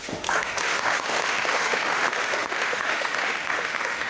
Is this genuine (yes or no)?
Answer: no